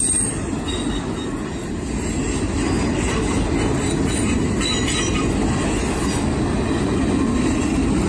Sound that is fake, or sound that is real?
real